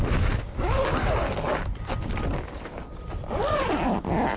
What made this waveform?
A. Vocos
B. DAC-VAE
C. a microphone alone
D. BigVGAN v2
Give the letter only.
C